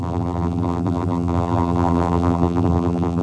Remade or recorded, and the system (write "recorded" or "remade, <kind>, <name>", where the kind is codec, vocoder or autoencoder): remade, vocoder, BigVGAN v2